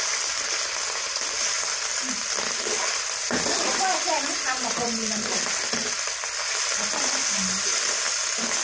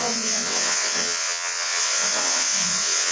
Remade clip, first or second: second